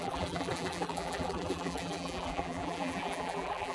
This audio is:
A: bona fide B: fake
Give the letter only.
B